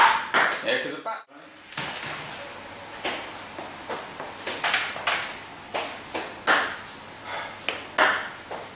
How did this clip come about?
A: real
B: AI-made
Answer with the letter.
A